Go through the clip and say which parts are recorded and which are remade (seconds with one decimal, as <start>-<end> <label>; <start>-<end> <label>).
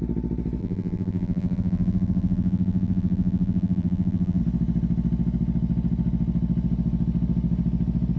0.0-0.6 recorded; 0.6-4.4 remade; 4.4-8.2 recorded